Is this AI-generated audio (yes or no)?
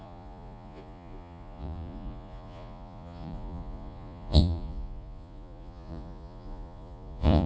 yes